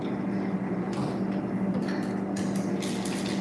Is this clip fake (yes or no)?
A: no